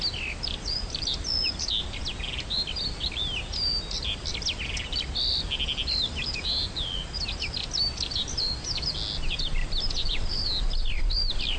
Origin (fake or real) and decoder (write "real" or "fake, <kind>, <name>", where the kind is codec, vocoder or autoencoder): real